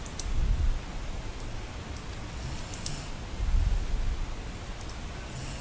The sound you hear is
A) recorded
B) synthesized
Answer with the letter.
A